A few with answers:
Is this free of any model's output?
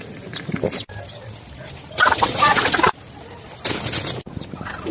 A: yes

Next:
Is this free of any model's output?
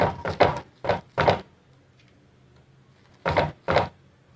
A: yes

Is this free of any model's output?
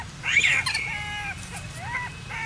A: yes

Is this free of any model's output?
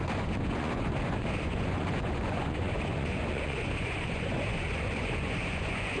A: no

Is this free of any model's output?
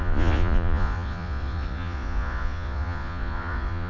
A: no